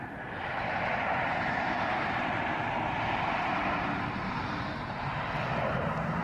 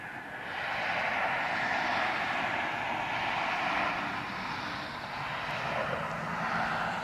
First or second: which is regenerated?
first